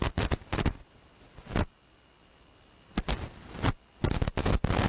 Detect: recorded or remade recorded